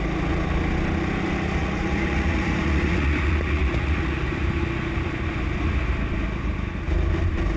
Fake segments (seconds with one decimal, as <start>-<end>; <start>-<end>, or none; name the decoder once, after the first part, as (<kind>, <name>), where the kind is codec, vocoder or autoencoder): 1.6-4.3 (vocoder, Vocos)